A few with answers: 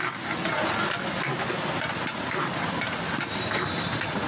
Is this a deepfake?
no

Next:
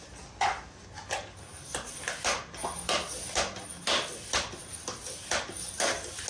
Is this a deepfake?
no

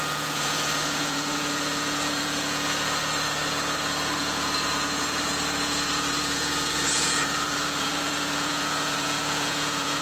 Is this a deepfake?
yes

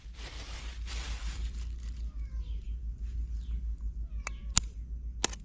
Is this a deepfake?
no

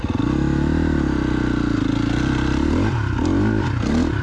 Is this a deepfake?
no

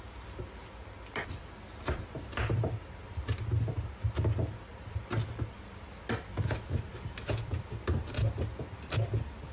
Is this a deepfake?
no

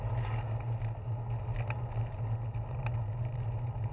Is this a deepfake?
no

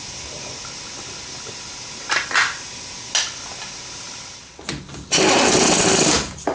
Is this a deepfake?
no